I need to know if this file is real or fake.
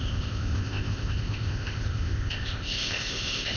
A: fake